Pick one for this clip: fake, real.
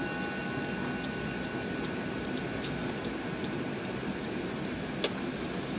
real